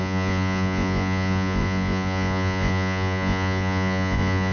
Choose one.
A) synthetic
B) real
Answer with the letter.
A